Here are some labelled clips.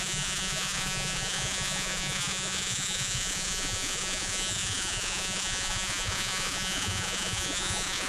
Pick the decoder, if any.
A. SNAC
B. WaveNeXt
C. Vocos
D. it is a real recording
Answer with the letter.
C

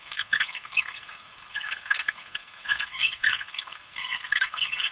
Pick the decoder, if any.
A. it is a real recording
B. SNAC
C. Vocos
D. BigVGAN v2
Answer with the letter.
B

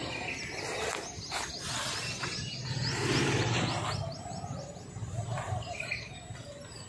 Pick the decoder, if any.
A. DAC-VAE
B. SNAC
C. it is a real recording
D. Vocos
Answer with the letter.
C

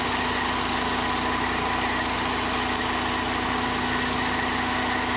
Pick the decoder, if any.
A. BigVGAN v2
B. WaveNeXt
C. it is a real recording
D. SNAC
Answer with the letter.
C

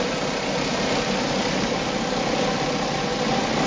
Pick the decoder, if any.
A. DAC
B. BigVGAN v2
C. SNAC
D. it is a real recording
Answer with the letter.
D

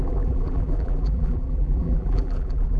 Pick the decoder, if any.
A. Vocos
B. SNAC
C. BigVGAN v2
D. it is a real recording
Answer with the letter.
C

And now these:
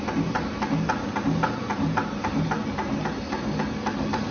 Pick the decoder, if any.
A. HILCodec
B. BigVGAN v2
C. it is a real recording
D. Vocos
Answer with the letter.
C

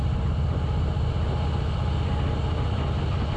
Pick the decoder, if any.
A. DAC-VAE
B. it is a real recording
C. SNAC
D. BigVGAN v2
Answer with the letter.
B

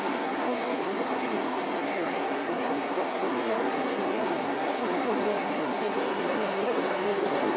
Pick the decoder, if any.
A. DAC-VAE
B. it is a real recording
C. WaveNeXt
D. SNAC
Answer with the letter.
D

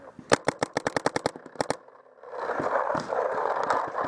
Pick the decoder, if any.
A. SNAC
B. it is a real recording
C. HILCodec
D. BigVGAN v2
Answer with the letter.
B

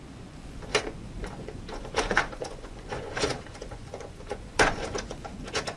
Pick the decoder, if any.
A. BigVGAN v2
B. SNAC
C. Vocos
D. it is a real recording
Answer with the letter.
C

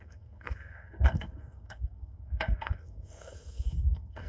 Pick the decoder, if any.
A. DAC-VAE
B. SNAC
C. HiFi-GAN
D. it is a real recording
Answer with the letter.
B